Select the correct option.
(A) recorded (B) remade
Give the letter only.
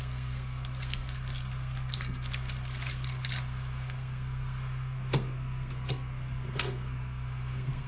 B